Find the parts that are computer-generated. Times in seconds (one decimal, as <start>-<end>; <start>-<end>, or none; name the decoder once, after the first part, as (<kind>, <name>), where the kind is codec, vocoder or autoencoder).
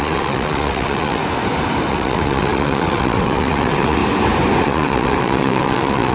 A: 0.0-1.2 (vocoder, WaveNeXt); 1.9-4.0; 4.6-6.1